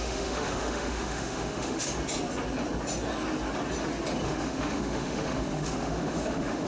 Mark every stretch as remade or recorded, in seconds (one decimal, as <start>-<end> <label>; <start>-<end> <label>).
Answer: 0.0-1.9 remade; 1.9-4.2 recorded; 4.2-6.7 remade